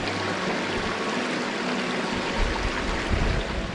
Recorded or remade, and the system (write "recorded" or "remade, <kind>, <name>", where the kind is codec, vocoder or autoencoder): recorded